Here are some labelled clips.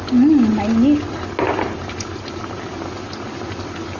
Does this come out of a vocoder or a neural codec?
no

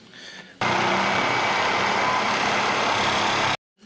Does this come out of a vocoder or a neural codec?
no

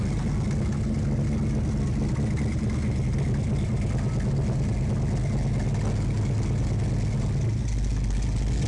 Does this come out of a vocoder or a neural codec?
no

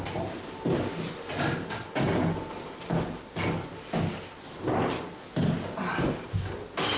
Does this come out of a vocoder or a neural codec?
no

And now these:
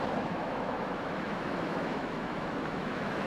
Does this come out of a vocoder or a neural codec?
yes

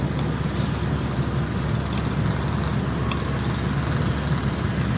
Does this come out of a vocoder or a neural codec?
no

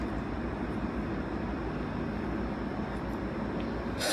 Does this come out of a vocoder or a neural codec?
no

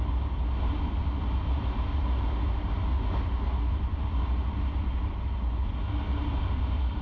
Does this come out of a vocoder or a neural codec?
no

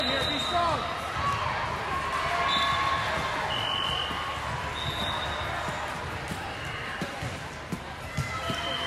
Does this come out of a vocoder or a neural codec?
no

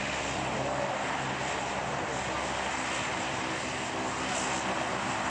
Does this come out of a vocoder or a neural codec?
no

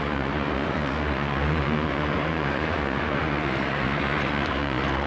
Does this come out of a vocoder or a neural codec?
yes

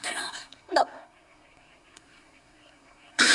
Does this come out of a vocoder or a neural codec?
yes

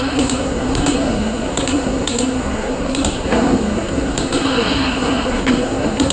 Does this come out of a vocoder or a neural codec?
yes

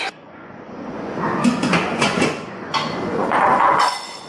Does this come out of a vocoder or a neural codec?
yes